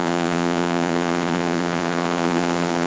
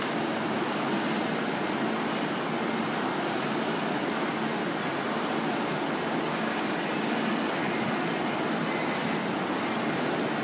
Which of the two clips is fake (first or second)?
first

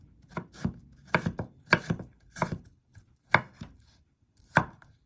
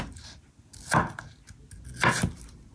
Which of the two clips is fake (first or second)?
first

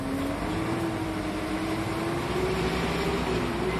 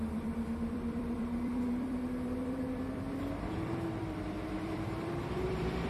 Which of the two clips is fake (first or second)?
second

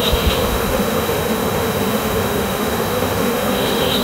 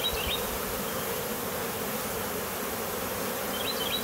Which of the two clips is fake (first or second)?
first